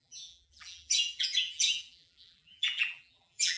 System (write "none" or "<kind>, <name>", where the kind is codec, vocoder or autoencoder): vocoder, BigVGAN v2